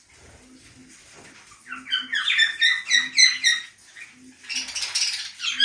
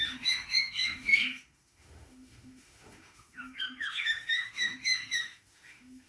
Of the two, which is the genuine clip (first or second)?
first